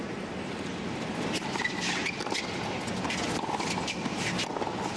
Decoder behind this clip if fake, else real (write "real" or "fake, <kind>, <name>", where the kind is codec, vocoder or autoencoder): real